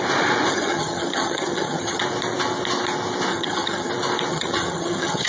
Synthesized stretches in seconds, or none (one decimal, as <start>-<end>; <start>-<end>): 0.5-2.0; 3.3-3.9; 4.3-5.3